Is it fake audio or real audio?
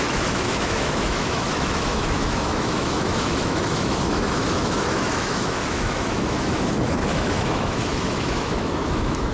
fake